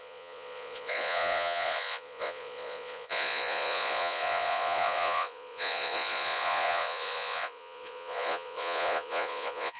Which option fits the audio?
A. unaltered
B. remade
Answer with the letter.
B